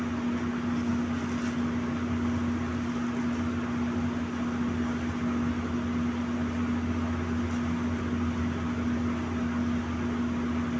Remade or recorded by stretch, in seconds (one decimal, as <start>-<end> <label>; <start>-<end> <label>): 0.0-10.8 recorded